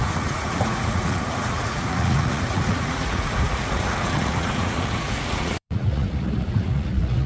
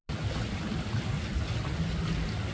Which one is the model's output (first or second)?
first